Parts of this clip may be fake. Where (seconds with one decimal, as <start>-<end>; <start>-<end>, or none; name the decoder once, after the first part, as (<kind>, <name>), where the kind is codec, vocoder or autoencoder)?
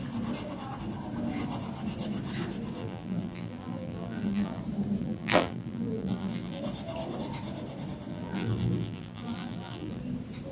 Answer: 2.8-4.6 (vocoder, BigVGAN v2); 5.0-6.6; 8.1-10.0